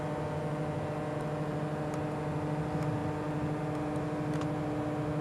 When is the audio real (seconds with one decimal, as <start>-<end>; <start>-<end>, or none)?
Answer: 0.0-5.2

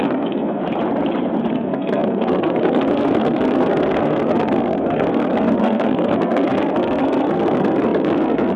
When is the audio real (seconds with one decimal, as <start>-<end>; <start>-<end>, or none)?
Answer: 0.6-1.5

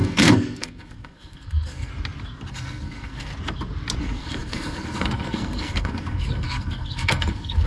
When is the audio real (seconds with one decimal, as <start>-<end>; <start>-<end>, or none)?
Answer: 1.9-2.5; 3.3-4.0

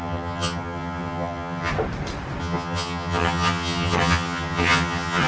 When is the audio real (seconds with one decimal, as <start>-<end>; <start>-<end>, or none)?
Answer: 1.7-2.4

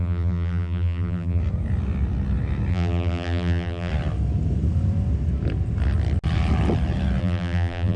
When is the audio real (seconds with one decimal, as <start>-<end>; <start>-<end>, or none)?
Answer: 1.4-2.7; 3.9-7.2

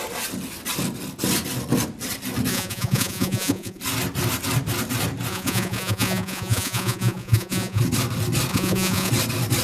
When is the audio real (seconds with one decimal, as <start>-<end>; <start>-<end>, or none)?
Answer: 0.0-2.5; 3.8-5.3; 7.8-8.5; 9.1-9.6